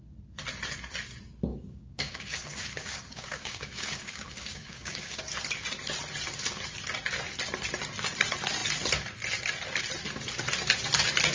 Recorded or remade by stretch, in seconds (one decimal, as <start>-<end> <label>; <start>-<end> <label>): 0.0-1.5 recorded; 1.5-5.2 remade; 5.2-11.3 recorded